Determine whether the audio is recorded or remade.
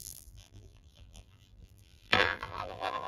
remade